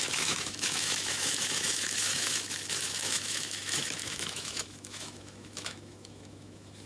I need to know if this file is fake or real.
fake